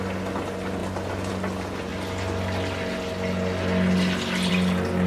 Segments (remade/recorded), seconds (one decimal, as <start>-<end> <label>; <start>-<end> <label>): 0.0-5.1 recorded